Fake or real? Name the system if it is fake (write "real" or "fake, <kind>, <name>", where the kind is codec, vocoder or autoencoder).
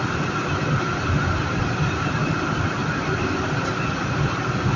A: real